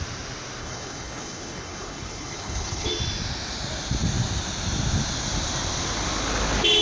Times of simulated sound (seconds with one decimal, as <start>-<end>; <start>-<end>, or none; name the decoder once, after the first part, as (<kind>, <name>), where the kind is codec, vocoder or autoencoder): 0.6-2.9 (codec, HILCodec)